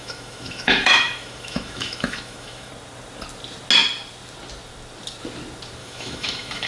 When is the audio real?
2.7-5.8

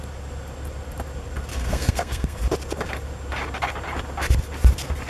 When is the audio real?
0.0-1.5; 2.4-5.1

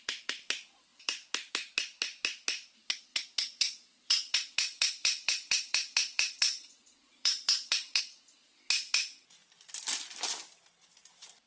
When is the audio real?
0.0-3.1; 8.0-11.5

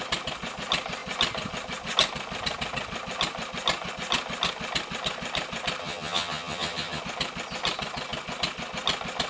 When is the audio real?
0.0-5.8; 7.0-9.3